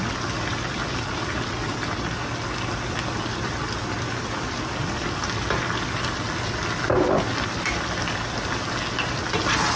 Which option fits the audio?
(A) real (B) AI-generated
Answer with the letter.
A